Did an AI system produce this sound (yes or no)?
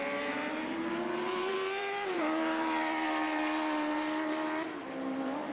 yes